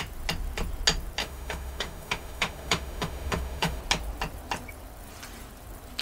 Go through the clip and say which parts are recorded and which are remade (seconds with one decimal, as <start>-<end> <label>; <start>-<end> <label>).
0.0-1.2 recorded; 1.2-3.8 remade; 3.8-6.0 recorded